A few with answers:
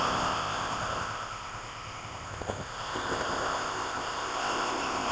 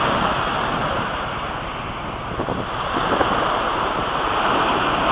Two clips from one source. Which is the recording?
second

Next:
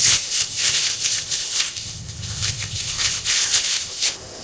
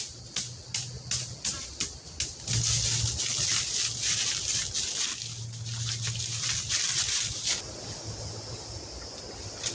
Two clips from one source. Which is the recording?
second